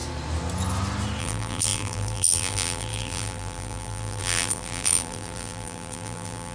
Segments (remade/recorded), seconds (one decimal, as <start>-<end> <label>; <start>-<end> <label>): 0.0-1.2 recorded; 1.2-6.5 remade